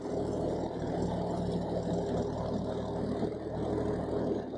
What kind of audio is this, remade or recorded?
recorded